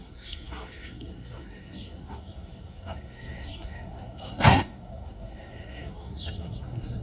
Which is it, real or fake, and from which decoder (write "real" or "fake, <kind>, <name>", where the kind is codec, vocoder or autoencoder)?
fake, codec, SNAC